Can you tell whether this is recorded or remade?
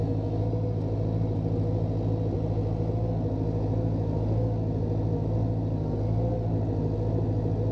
recorded